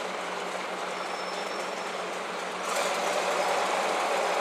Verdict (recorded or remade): recorded